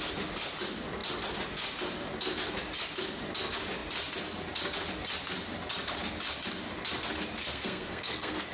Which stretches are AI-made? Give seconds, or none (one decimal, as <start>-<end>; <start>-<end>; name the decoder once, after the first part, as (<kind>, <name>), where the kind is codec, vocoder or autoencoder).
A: 7.4-8.5 (codec, SNAC)